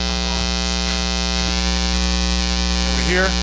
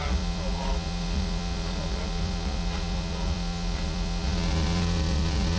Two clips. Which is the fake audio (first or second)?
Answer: second